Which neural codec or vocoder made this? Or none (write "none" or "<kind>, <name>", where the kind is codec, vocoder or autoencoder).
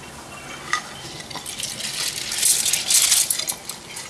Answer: none